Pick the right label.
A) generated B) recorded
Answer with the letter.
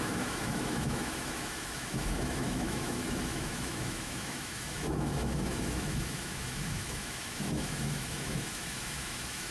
A